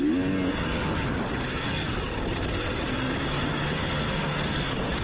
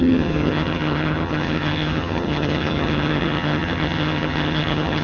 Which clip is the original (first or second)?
first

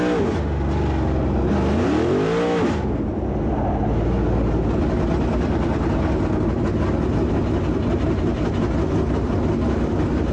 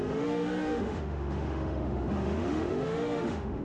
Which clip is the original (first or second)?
first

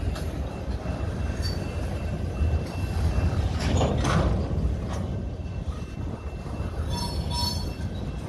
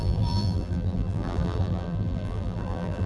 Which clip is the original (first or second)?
first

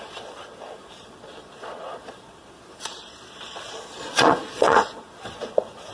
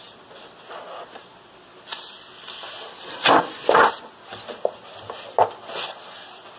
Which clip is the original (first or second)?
second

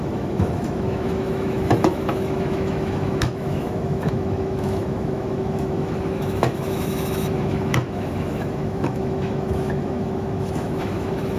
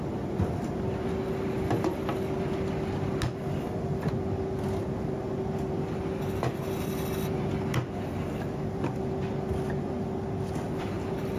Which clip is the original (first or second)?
second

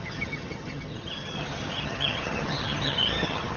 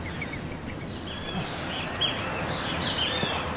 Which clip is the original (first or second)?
second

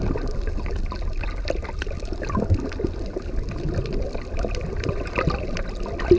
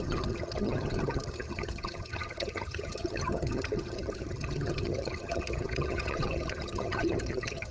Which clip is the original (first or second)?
first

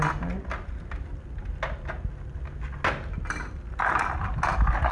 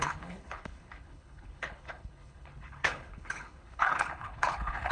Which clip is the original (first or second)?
first